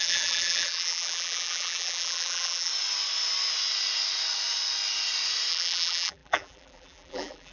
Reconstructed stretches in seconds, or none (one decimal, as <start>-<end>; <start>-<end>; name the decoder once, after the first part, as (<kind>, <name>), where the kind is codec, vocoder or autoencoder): 0.0-2.7 (vocoder, BigVGAN v2); 5.5-7.5